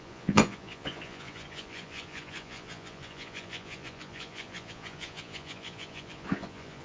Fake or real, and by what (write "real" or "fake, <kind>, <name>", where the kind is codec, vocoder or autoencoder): fake, vocoder, Vocos